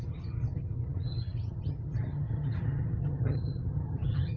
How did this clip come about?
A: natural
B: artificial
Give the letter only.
B